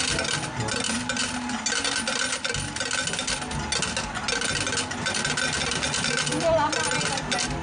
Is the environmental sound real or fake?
real